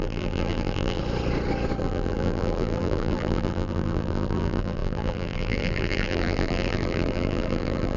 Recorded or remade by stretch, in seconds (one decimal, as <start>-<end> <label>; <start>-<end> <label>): 0.0-1.0 remade; 1.0-1.8 recorded; 1.8-8.0 remade